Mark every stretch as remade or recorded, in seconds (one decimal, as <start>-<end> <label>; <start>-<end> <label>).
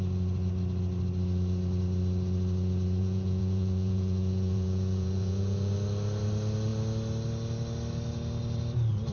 0.0-3.0 recorded; 3.0-5.7 remade; 5.7-9.1 recorded